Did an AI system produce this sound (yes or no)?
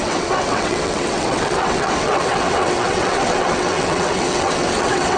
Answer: yes